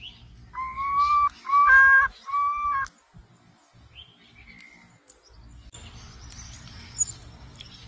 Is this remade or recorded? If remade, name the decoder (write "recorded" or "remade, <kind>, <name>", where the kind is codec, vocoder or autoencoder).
recorded